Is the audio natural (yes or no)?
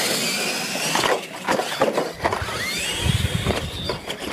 yes